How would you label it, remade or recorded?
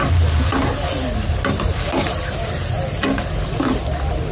recorded